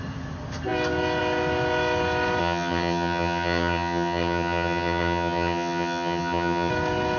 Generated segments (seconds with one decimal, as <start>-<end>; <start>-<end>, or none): 2.4-6.7